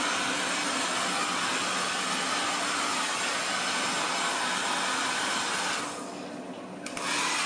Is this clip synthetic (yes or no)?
no